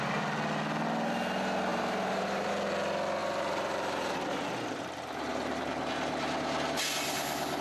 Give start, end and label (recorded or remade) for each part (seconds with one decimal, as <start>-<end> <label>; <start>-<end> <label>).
0.0-1.7 recorded; 1.7-2.5 remade; 2.5-3.2 recorded; 3.2-5.9 remade; 5.9-7.6 recorded